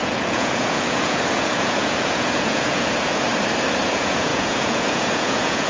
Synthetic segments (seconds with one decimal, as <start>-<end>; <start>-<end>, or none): 0.0-3.3; 3.8-5.7